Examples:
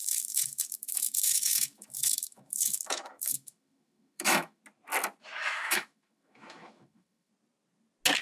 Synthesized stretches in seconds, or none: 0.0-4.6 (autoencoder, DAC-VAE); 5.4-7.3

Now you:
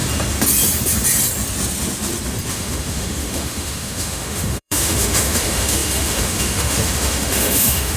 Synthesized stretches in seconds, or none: 2.5-8.0 (autoencoder, DAC-VAE)

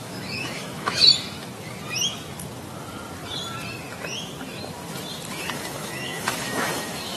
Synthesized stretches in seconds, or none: 0.0-1.1 (autoencoder, DAC-VAE); 5.3-7.2

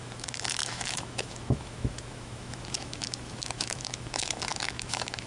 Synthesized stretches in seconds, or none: 0.0-5.3 (autoencoder, DAC-VAE)

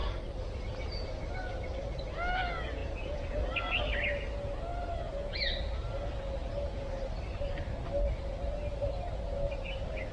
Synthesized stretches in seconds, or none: none

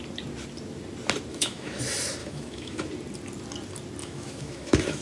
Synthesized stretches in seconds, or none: 1.3-1.8 (autoencoder, DAC-VAE); 2.2-2.9; 4.0-5.0

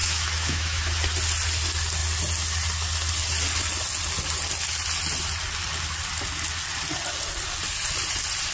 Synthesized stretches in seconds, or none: 0.0-0.9 (autoencoder, DAC-VAE)

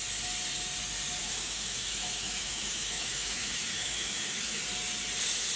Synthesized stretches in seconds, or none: 1.2-4.6 (autoencoder, DAC-VAE)